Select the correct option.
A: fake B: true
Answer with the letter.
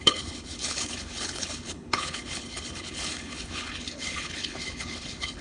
A